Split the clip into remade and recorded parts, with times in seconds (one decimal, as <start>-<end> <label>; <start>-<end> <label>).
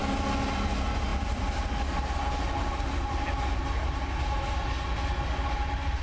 0.0-6.0 recorded